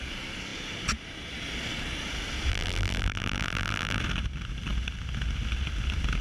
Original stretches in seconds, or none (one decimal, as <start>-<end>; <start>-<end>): 0.0-2.5; 4.0-6.2